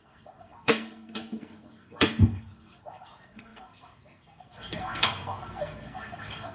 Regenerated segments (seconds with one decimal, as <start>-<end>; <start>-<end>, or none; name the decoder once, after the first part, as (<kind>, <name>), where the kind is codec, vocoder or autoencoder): 0.0-6.5 (codec, SNAC)